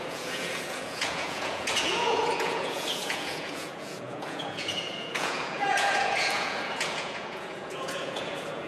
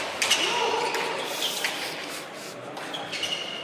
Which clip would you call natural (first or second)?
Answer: second